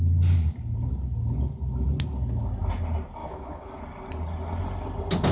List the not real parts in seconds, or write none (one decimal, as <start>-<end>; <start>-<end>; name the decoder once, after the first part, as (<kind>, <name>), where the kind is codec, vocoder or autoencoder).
3.2-3.8 (autoencoder, DAC-VAE)